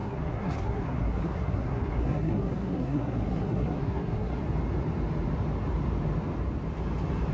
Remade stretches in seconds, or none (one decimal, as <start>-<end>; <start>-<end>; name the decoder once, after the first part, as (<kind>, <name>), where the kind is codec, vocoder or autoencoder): 0.0-4.4 (codec, SNAC)